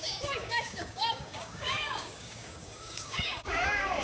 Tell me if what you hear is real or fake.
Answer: fake